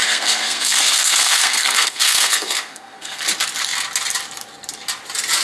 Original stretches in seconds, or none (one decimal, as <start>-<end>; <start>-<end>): 3.2-5.4